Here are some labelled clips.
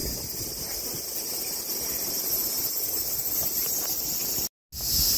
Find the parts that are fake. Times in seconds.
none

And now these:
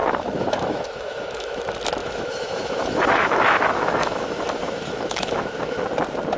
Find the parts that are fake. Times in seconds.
0.0-1.6 (autoencoder, DAC-VAE); 2.0-5.8

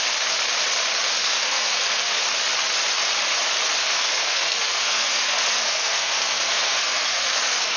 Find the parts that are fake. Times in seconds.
1.2-2.2 (codec, SNAC); 3.8-7.8

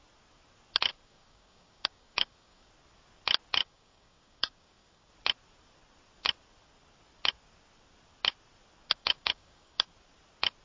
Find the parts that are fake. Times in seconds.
0.9-2.7 (codec, DAC); 3.6-5.1; 9.0-9.9

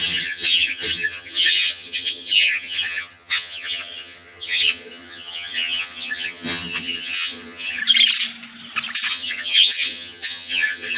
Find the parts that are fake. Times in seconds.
0.0-7.8 (vocoder, HiFi-GAN); 9.1-11.0

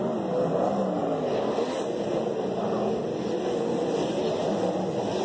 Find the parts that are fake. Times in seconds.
none

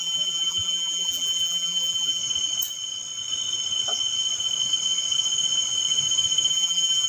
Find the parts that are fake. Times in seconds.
0.0-2.2 (vocoder, BigVGAN v2); 6.5-7.1